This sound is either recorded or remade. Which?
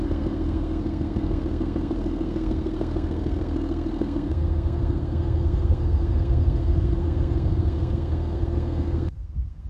remade